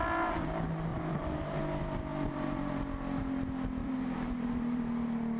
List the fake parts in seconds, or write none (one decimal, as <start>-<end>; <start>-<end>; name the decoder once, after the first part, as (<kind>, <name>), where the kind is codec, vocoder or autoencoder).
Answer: 0.9-1.6 (vocoder, BigVGAN v2); 2.1-2.7; 3.8-4.8